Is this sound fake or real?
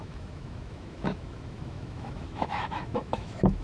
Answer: fake